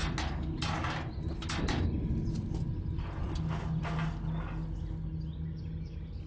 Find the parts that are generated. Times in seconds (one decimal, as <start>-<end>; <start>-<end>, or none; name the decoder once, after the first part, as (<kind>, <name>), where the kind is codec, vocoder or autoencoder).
none